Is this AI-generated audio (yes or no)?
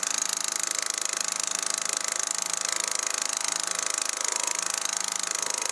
no